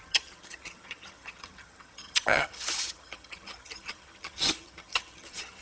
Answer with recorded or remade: remade